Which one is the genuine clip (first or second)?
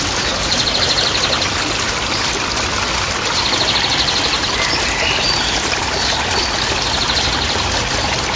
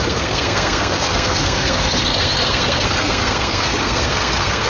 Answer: first